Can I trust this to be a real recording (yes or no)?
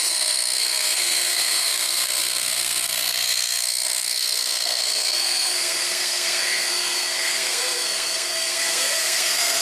no